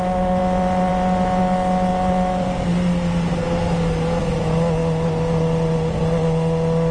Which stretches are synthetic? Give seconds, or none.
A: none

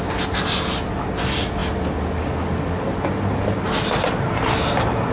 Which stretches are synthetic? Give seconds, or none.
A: none

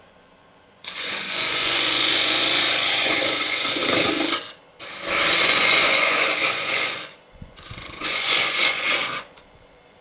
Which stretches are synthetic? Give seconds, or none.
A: 0.0-3.8 (vocoder, Vocos); 5.4-10.0

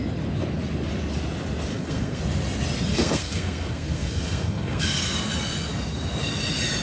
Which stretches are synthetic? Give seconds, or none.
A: 1.7-2.2 (codec, SNAC); 2.9-5.3

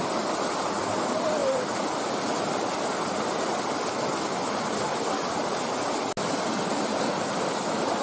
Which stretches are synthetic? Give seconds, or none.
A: none

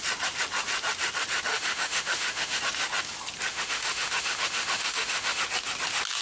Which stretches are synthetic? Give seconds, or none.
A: 1.5-2.6 (autoencoder, DAC-VAE); 3.5-5.4

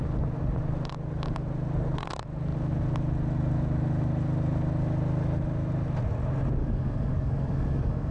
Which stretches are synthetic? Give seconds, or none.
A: 6.6-8.1 (codec, DAC)

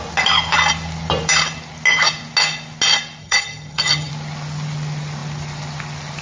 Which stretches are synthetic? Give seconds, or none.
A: 3.2-4.1 (vocoder, HiFi-GAN)